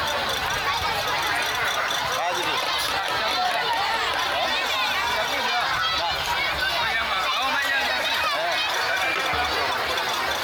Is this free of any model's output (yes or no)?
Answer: yes